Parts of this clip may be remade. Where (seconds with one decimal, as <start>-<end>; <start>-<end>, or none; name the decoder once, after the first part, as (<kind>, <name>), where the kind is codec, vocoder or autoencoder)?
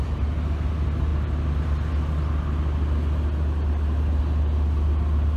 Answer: none